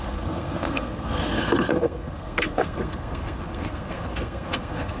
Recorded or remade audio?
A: remade